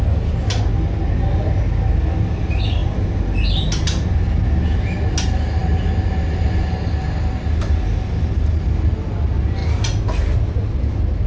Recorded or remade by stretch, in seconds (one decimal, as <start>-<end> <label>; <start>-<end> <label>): 0.0-11.3 recorded